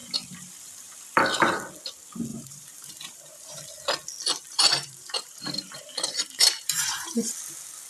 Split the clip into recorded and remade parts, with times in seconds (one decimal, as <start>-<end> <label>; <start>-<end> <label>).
0.0-2.3 recorded; 2.3-3.5 remade; 3.5-4.5 recorded; 4.5-7.3 remade; 7.3-7.9 recorded